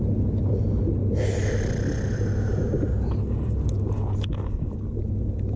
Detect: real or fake real